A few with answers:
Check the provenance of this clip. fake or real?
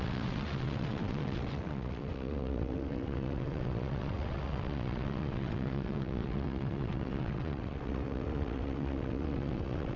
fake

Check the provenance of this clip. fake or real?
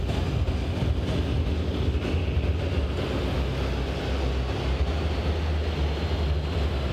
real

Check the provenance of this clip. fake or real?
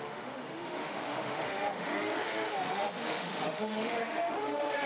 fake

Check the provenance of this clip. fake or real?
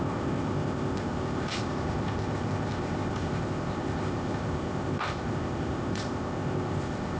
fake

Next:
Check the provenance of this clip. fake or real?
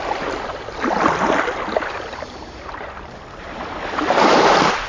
fake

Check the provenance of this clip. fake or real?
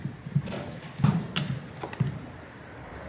real